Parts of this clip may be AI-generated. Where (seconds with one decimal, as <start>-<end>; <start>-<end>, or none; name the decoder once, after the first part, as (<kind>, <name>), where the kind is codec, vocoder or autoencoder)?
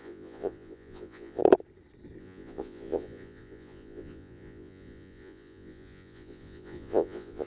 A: 0.0-1.4 (vocoder, Vocos); 2.2-7.5